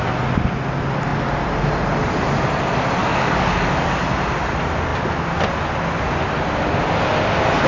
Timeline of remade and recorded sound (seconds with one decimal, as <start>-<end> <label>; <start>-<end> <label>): 0.0-3.0 recorded; 3.0-4.0 remade; 4.0-7.7 recorded